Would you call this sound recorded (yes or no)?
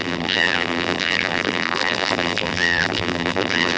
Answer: no